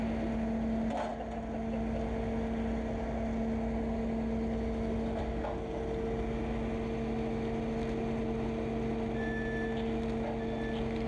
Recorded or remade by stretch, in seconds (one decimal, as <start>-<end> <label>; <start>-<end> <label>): 0.0-11.1 recorded